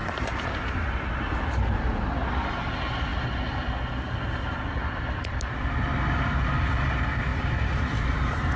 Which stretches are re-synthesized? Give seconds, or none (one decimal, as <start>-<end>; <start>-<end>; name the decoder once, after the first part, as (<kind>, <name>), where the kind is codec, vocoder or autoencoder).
7.3-8.6 (vocoder, BigVGAN v2)